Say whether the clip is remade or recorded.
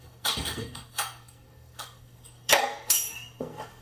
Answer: remade